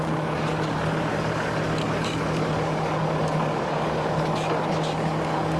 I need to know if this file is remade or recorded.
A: remade